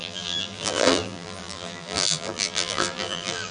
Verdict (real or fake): fake